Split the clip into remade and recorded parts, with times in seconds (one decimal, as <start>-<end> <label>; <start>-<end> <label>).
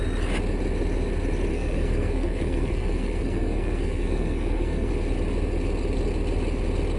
0.0-1.5 recorded; 1.5-4.9 remade; 4.9-7.0 recorded